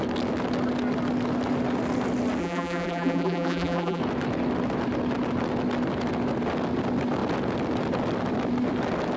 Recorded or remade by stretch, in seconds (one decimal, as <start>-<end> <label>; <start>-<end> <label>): 0.0-2.4 recorded; 2.4-4.0 remade; 4.0-9.2 recorded